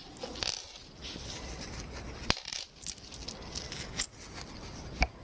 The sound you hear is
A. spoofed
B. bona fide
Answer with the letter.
B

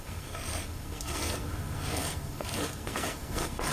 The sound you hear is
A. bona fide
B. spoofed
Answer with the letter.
B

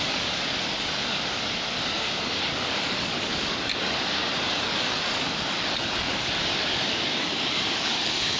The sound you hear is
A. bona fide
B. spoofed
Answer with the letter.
B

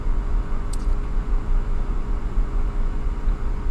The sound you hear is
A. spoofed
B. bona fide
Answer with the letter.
A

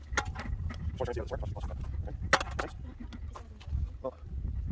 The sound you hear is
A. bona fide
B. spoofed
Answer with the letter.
A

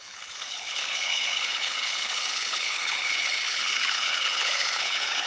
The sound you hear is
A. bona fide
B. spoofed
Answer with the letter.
B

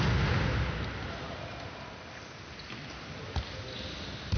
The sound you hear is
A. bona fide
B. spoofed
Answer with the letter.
A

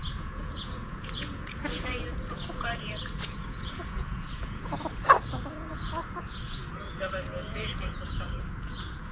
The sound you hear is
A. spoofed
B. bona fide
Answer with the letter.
A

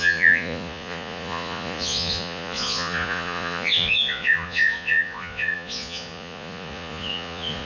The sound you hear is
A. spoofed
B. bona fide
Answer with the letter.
A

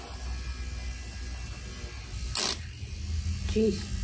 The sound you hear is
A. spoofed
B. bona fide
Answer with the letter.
B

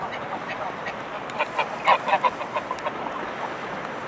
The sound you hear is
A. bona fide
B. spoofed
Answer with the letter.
A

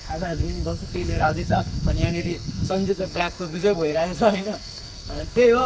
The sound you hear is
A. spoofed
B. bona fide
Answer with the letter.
A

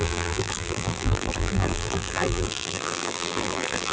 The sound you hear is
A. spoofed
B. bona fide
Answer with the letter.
A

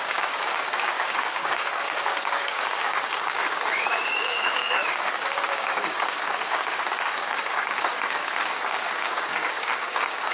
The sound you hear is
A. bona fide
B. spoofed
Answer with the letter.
B